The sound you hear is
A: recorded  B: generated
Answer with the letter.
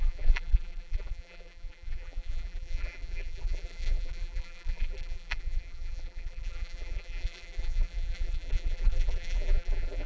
B